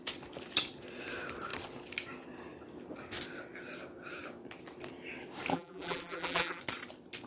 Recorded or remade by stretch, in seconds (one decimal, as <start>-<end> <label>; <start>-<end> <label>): 0.0-5.5 recorded; 5.5-6.6 remade; 6.6-7.3 recorded